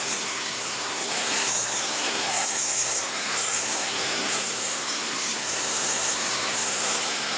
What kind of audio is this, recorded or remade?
remade